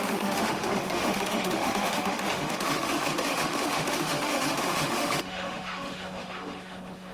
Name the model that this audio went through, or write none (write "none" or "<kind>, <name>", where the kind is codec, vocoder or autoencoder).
autoencoder, DAC-VAE